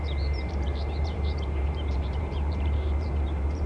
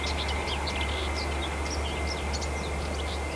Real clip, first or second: second